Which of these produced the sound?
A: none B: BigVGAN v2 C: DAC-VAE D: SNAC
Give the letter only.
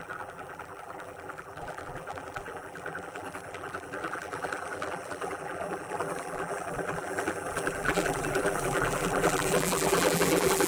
B